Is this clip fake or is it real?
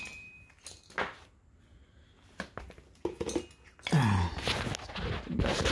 real